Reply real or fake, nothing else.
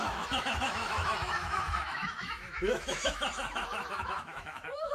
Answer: fake